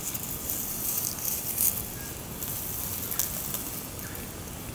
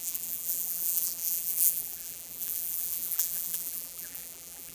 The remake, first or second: second